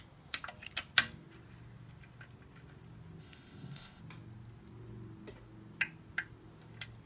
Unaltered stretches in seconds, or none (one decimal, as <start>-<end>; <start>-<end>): 0.0-3.2; 4.0-7.1